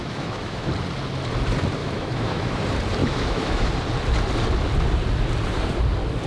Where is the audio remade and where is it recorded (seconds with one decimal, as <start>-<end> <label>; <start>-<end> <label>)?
0.0-0.7 remade; 0.7-1.8 recorded; 1.8-2.6 remade; 2.6-3.0 recorded; 3.0-3.7 remade; 3.7-6.3 recorded